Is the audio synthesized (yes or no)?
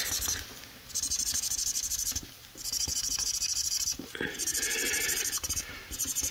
no